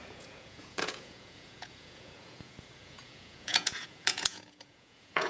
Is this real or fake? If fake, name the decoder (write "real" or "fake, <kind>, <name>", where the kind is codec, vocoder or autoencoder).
fake, vocoder, Vocos